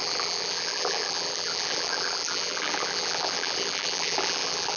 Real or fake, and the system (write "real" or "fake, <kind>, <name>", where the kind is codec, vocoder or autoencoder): fake, vocoder, BigVGAN v2